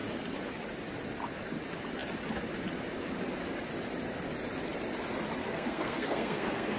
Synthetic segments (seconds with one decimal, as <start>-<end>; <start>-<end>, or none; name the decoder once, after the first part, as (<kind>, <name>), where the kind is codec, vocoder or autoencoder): 5.4-6.8 (codec, SNAC)